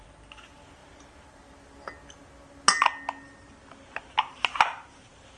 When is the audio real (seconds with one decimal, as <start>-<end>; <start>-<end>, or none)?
0.0-5.4